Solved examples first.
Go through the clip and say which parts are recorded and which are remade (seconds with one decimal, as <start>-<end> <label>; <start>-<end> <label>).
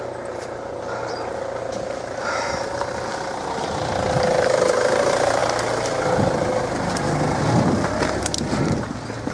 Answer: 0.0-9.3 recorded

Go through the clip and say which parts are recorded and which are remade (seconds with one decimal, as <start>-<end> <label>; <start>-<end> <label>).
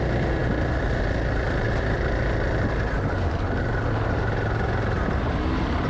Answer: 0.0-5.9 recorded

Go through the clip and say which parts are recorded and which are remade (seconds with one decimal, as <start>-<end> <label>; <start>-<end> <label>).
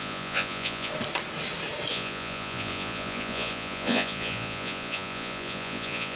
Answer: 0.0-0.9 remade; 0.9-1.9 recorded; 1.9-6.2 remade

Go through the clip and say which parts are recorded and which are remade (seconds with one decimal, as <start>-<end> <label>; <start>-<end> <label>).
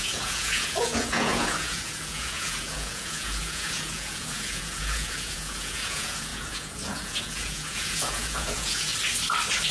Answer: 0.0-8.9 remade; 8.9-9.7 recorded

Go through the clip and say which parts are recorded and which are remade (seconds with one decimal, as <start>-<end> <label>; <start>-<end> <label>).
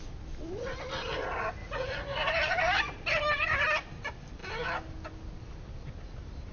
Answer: 0.0-1.6 recorded; 1.6-2.2 remade; 2.2-6.5 recorded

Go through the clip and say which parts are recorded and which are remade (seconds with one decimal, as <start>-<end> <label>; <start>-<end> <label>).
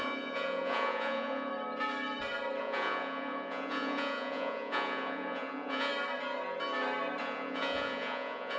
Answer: 0.0-1.5 remade; 1.5-2.6 recorded; 2.6-5.9 remade; 5.9-7.2 recorded; 7.2-8.6 remade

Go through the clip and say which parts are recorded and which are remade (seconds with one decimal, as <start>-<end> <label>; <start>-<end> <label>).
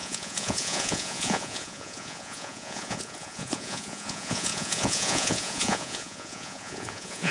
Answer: 0.0-7.3 remade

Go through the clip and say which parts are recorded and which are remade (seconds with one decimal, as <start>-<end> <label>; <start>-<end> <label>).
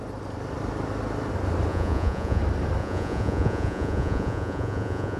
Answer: 0.0-1.7 recorded; 1.7-2.4 remade; 2.4-2.8 recorded; 2.8-5.2 remade